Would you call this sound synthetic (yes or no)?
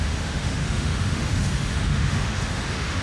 yes